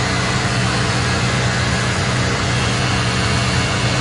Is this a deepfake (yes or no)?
yes